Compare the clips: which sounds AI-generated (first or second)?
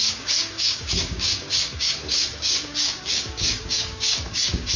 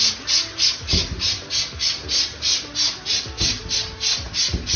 first